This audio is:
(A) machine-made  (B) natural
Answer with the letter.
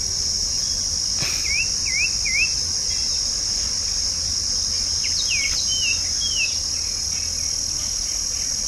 B